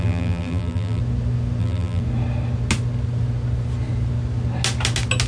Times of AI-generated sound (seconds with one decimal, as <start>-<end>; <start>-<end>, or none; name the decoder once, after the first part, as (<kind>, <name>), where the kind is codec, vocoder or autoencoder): 0.0-1.0 (vocoder, BigVGAN v2); 1.6-2.0